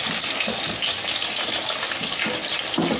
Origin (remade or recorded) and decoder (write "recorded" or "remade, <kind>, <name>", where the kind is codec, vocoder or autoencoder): recorded